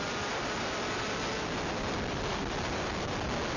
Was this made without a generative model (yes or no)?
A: yes